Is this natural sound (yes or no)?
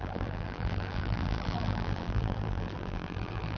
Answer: no